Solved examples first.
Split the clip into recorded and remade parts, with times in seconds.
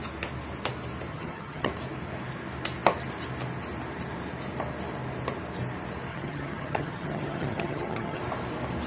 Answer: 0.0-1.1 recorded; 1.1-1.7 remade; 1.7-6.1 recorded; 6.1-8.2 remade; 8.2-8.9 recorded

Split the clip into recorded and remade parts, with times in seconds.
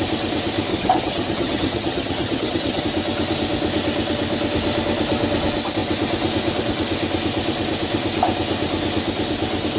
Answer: 0.0-0.7 recorded; 0.7-2.8 remade; 2.8-9.8 recorded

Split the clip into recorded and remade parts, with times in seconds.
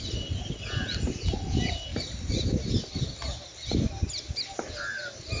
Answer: 0.0-5.4 recorded